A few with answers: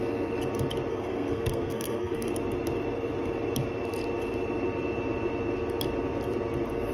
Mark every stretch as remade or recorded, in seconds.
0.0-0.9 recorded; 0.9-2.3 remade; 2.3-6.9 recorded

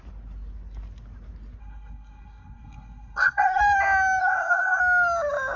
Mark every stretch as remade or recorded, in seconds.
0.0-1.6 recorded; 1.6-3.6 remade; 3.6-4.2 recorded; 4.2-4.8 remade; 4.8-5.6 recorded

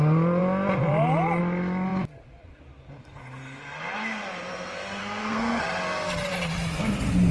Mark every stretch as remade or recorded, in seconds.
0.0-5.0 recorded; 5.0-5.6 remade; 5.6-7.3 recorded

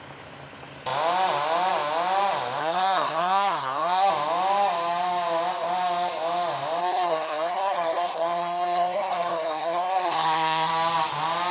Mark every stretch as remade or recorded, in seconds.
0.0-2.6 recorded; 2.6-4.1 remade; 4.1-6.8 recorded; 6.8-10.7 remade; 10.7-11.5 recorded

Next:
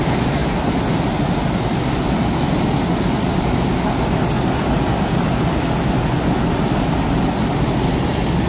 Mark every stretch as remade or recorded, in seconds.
0.0-8.5 recorded

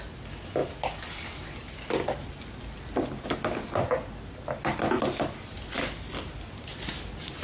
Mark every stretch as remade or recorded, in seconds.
0.0-7.4 recorded

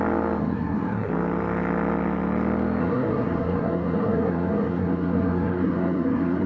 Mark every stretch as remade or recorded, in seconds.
0.0-0.4 recorded; 0.4-1.1 remade; 1.1-2.8 recorded; 2.8-6.5 remade

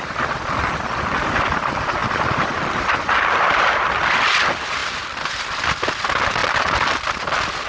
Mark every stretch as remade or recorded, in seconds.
0.0-7.7 recorded